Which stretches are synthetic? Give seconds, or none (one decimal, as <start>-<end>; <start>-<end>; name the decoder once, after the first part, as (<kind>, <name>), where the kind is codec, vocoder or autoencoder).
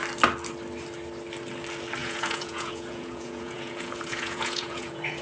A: 2.0-5.2 (vocoder, Vocos)